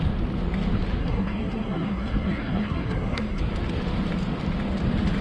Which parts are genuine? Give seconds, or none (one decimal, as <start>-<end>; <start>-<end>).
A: 0.0-1.0; 3.4-5.2